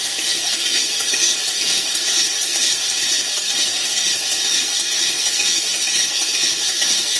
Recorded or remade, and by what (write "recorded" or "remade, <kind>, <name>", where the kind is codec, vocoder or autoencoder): remade, codec, SNAC